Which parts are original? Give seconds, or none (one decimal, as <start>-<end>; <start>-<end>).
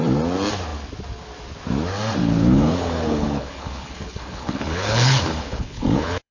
0.0-2.2